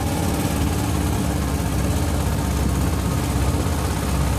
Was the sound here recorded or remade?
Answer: recorded